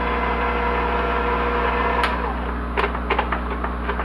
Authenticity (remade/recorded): recorded